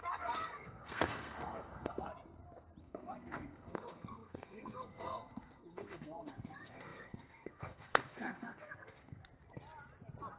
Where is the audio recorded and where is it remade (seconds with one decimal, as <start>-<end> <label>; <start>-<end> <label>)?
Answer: 0.0-2.1 remade; 2.1-2.8 recorded; 2.8-9.2 remade; 9.2-10.4 recorded